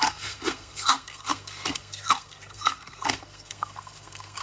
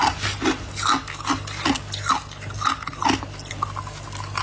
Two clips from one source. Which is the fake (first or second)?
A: first